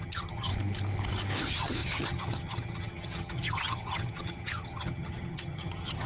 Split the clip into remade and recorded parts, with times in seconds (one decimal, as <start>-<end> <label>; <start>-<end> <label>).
0.0-0.5 remade; 0.5-1.4 recorded; 1.4-6.1 remade